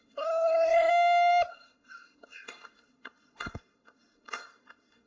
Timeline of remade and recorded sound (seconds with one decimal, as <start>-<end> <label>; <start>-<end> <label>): 0.0-0.9 remade; 0.9-1.5 recorded; 1.5-5.1 remade